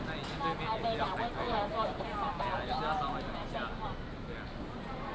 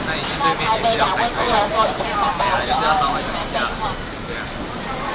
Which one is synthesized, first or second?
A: second